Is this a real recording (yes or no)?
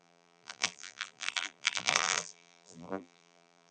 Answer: no